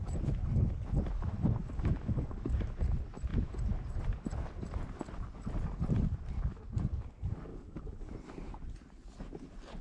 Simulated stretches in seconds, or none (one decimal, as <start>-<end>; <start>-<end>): 1.6-2.6; 7.5-8.1